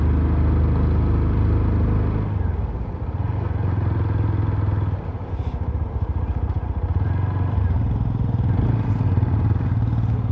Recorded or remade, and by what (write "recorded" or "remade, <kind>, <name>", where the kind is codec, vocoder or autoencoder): recorded